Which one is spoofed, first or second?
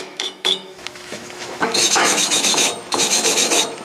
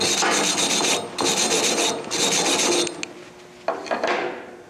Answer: first